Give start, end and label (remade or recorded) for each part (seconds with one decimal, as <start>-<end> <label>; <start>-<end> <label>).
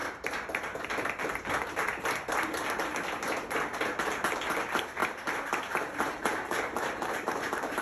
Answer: 0.0-1.9 remade; 1.9-4.6 recorded; 4.6-5.0 remade; 5.0-5.6 recorded; 5.6-7.8 remade